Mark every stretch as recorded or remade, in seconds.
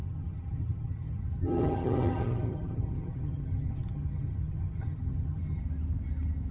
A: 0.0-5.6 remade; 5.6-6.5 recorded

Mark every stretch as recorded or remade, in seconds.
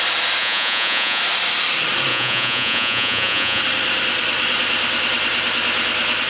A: 0.0-0.4 recorded; 0.4-1.2 remade; 1.2-2.1 recorded; 2.1-3.6 remade; 3.6-6.3 recorded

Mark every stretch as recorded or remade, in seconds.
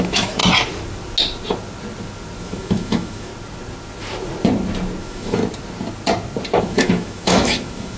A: 0.0-0.4 remade; 0.4-2.4 recorded; 2.4-3.3 remade; 3.3-5.0 recorded; 5.0-5.4 remade; 5.4-6.6 recorded; 6.6-8.0 remade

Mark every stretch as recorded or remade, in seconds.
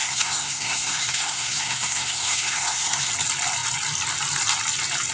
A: 0.0-3.1 remade; 3.1-5.1 recorded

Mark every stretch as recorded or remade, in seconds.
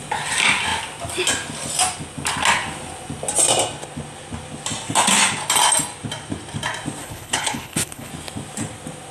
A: 0.0-7.0 recorded; 7.0-8.1 remade; 8.1-9.1 recorded